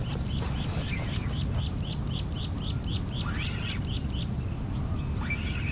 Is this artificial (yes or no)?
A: no